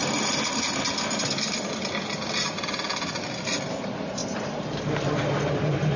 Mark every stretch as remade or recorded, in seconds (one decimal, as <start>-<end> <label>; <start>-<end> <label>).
0.0-4.2 recorded; 4.2-6.0 remade